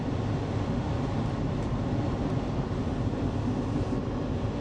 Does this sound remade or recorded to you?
recorded